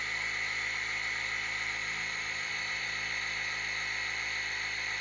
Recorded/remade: recorded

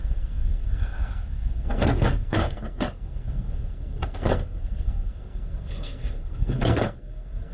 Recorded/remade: remade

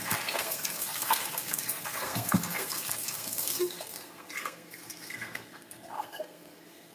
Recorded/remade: remade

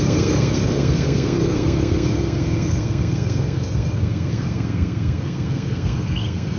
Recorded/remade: remade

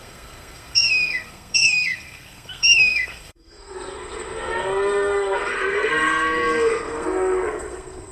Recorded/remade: remade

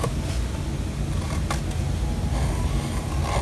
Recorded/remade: recorded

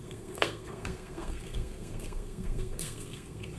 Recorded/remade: remade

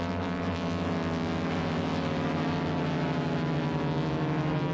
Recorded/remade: recorded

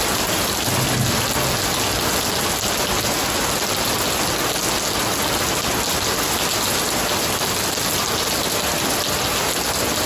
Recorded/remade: recorded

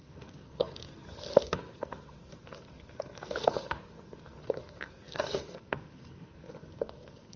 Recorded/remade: remade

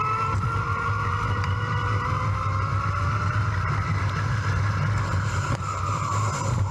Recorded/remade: recorded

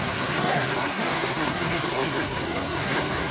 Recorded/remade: remade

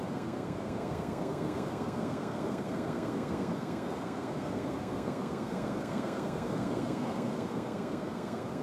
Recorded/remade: remade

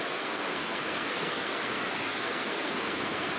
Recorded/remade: remade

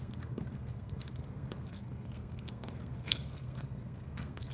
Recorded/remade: remade